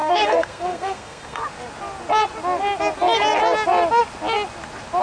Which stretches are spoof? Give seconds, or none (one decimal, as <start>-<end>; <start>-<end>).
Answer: 0.0-1.4